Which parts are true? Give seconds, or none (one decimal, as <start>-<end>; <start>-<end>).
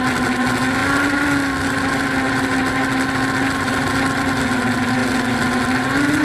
0.0-6.2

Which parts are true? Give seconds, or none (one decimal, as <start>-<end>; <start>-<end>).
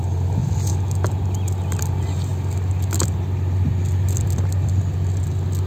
0.0-5.7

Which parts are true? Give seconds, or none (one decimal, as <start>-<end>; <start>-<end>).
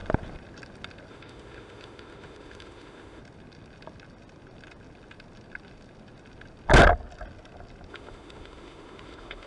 0.0-1.1; 3.2-7.9